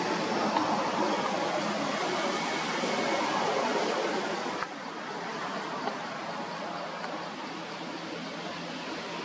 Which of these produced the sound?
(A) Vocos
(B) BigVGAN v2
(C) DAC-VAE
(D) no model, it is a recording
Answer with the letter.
D